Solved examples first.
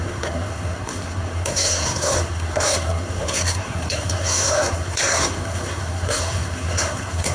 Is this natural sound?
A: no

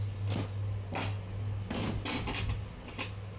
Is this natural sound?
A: yes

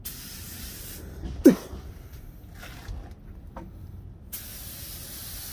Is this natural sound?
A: yes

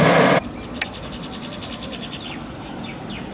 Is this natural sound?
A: yes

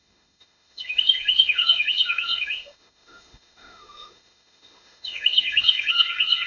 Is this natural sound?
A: no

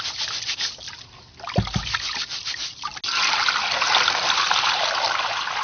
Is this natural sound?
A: yes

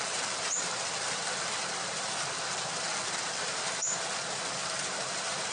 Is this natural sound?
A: no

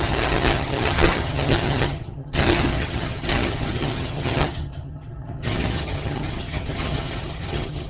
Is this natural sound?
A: no